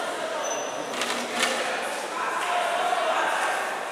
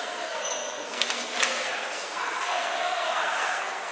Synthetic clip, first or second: second